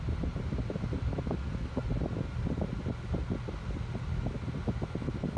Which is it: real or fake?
real